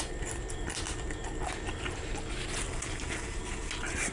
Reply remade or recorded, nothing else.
recorded